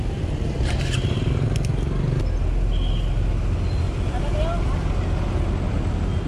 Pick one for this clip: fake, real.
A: real